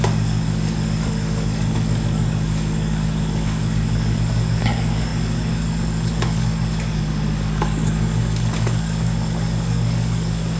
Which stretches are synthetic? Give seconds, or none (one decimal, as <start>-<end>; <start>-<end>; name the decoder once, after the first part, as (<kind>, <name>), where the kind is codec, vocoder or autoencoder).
0.0-10.6 (codec, DAC)